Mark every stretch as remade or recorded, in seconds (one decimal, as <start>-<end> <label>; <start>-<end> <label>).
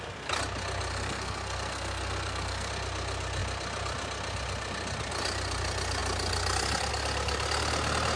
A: 0.0-0.9 recorded; 0.9-2.7 remade; 2.7-8.2 recorded